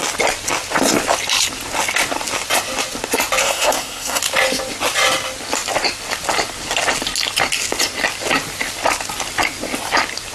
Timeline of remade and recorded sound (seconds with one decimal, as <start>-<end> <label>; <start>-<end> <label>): 0.0-3.4 recorded; 3.4-4.2 remade; 4.2-10.3 recorded